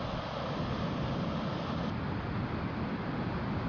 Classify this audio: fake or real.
real